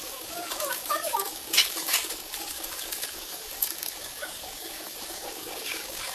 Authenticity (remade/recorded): remade